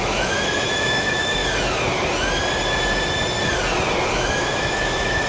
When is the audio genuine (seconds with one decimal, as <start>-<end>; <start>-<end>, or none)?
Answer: 1.4-4.1